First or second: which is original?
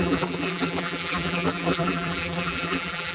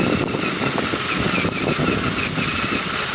second